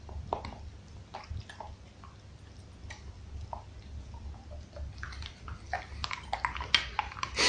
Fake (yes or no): no